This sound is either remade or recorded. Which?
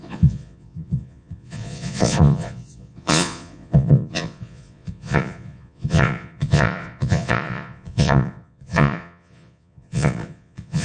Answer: remade